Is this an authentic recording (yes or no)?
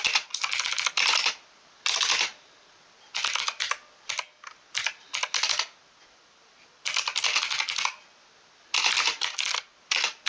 yes